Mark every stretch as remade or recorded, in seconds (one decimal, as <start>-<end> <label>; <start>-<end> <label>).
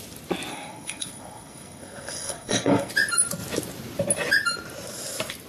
0.0-0.5 recorded; 0.5-2.9 remade; 2.9-5.5 recorded